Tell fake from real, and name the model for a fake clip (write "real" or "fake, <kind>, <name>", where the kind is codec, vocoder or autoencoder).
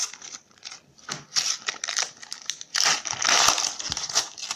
real